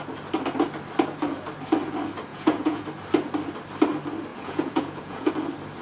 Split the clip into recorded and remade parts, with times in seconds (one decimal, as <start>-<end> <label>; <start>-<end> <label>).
0.0-2.3 recorded; 2.3-2.8 remade; 2.8-4.3 recorded; 4.3-5.3 remade; 5.3-5.8 recorded